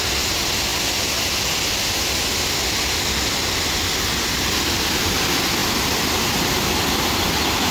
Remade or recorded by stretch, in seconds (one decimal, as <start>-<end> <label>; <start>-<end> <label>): 0.0-7.7 recorded